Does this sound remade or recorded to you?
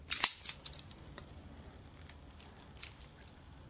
remade